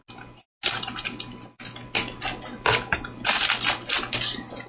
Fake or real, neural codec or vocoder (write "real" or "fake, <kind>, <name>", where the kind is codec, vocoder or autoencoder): real